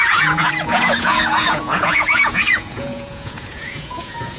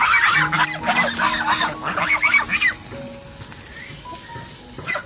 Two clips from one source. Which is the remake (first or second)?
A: first